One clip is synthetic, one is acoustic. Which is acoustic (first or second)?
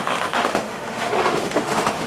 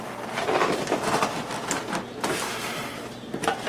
second